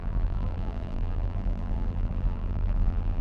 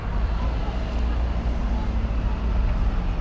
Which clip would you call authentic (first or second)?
second